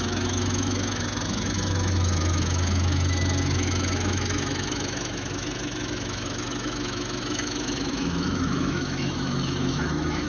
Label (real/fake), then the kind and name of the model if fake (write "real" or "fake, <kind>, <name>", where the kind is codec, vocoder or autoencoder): fake, autoencoder, DAC-VAE